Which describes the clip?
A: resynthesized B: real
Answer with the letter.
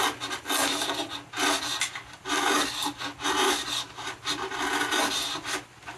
B